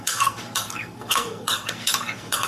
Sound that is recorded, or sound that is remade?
remade